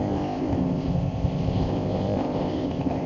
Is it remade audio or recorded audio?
remade